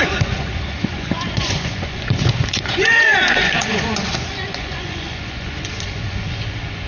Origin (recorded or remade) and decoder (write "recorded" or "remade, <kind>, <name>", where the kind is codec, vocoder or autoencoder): remade, vocoder, Vocos